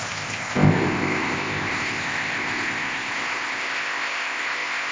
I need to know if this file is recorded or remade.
remade